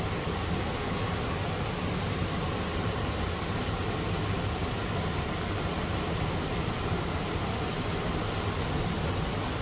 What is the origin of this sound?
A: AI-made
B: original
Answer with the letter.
B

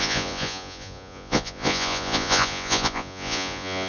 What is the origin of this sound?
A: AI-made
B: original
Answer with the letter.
A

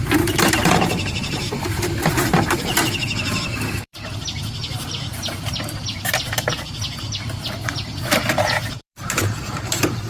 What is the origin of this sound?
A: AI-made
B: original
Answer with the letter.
A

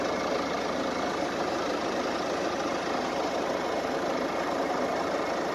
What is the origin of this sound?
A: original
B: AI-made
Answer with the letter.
A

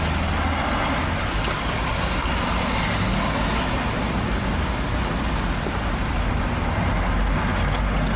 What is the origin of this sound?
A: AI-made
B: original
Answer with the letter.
B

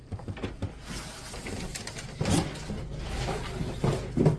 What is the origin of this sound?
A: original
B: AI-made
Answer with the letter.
A